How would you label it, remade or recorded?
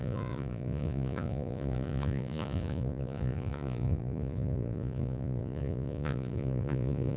remade